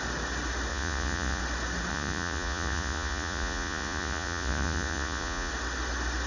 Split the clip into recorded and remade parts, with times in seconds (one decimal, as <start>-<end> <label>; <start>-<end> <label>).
0.0-0.7 recorded; 0.7-1.4 remade; 1.4-1.9 recorded; 1.9-5.5 remade; 5.5-6.3 recorded